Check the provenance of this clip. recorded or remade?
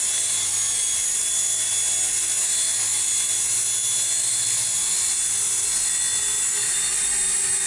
recorded